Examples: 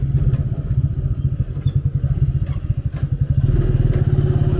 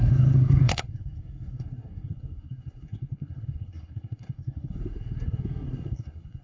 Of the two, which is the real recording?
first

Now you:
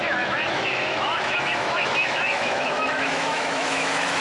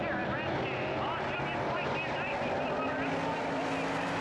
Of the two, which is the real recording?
second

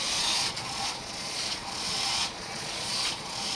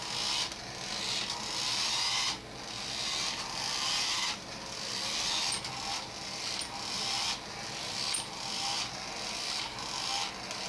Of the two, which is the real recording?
second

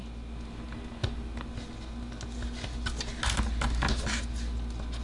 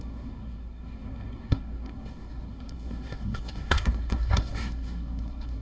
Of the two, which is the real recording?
first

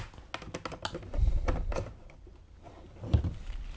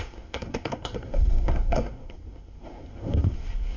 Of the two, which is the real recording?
first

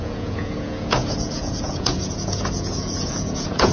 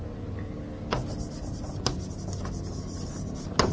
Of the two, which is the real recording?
second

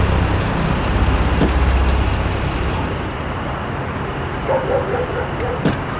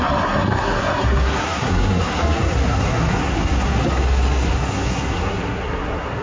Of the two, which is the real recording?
first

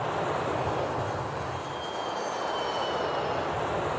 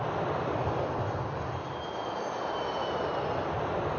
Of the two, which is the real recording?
first